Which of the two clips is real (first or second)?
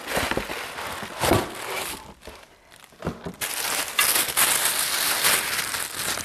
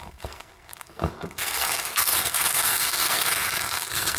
first